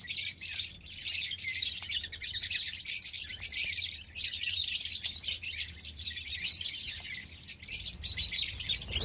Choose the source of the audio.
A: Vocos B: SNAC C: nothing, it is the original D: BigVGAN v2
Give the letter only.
C